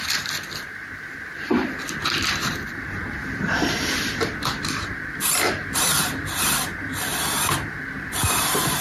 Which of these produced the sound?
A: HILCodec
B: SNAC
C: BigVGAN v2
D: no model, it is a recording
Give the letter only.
C